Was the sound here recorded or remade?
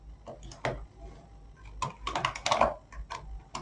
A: recorded